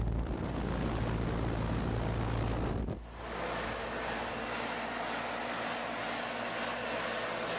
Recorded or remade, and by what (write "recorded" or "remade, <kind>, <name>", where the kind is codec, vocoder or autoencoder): recorded